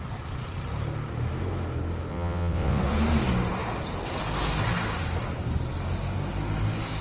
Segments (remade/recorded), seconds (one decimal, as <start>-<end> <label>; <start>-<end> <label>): 0.0-2.1 recorded; 2.1-2.8 remade; 2.8-7.0 recorded